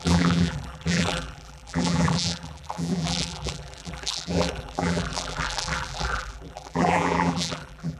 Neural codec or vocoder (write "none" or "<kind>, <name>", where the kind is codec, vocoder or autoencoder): vocoder, BigVGAN v2